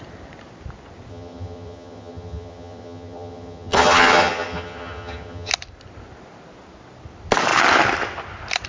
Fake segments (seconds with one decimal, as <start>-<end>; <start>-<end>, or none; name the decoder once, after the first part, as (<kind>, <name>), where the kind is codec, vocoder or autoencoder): 1.1-5.5 (vocoder, HiFi-GAN)